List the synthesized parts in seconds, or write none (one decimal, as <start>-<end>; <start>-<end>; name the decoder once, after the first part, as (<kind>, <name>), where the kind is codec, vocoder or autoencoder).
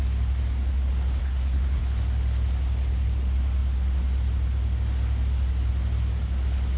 1.2-1.8 (codec, SNAC)